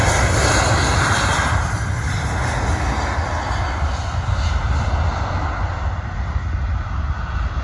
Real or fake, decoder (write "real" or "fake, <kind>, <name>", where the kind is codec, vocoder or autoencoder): real